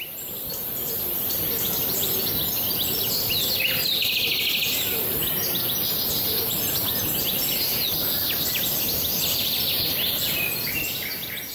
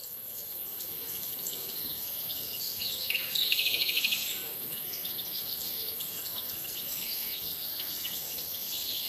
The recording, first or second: first